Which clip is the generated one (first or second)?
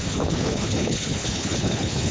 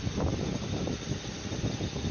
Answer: first